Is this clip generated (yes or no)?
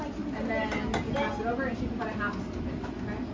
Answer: no